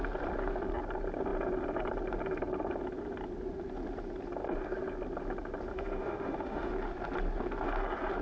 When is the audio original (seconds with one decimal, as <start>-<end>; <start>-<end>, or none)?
0.0-5.7; 6.7-8.2